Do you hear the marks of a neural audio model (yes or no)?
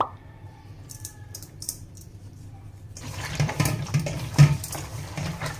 yes